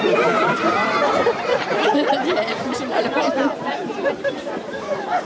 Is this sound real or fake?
fake